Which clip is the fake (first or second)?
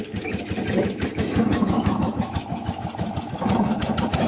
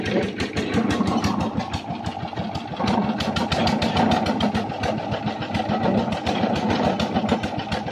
first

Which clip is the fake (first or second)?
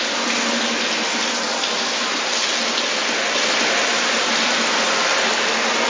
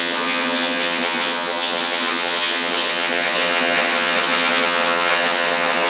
second